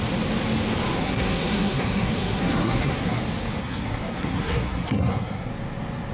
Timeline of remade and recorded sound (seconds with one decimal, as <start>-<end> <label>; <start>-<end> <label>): 0.0-1.0 recorded; 1.0-3.2 remade; 3.2-3.6 recorded; 3.6-5.5 remade; 5.5-6.1 recorded